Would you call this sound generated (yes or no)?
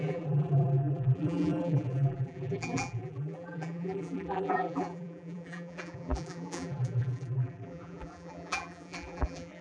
yes